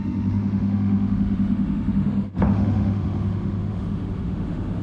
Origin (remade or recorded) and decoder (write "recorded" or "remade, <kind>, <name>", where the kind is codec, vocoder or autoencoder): remade, autoencoder, DAC-VAE